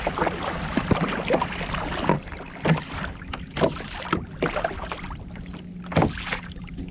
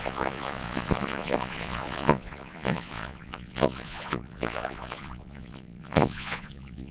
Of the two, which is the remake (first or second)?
second